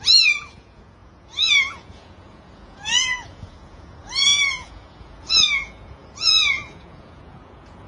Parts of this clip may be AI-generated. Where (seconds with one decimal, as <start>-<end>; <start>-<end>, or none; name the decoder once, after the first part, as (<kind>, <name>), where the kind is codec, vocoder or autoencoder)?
0.0-7.9 (vocoder, Vocos)